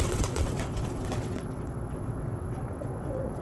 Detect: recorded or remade remade